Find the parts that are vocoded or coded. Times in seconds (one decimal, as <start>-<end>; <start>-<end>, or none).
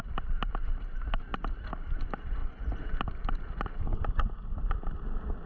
none